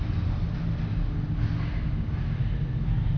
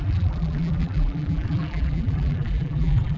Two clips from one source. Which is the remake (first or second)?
second